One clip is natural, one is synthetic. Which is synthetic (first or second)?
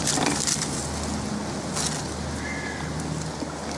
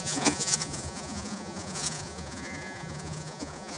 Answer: second